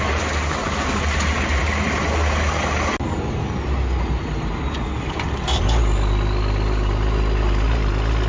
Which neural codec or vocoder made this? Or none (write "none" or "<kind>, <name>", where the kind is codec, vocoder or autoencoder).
none